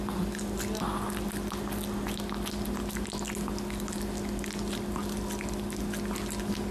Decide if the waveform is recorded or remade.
recorded